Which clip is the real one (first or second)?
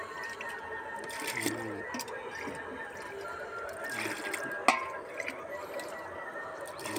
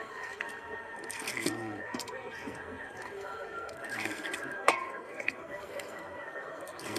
first